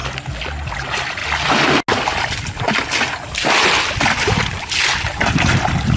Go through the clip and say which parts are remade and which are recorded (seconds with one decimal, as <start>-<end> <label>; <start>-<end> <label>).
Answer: 0.0-6.0 recorded